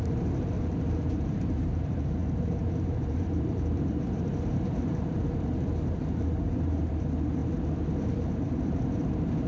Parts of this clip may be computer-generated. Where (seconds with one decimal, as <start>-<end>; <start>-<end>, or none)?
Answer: 0.0-7.4; 8.0-9.5